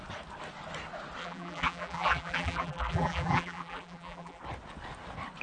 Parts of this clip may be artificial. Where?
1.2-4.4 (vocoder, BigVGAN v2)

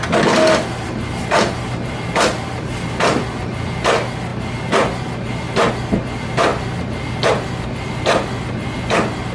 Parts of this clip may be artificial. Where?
none

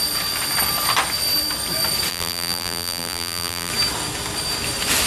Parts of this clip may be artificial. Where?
2.1-3.7 (vocoder, BigVGAN v2)

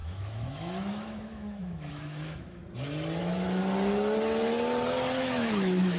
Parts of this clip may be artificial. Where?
0.0-2.6 (autoencoder, DAC-VAE); 3.2-3.6; 5.2-6.0

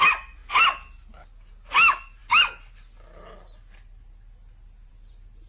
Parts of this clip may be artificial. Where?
none

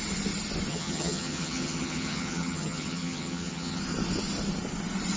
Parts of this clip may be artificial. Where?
0.7-3.8 (vocoder, HiFi-GAN)

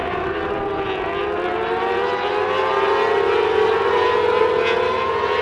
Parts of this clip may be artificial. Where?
none

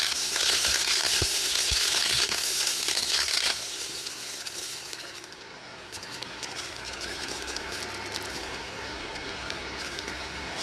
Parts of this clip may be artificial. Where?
0.0-7.8 (codec, SNAC); 8.3-10.6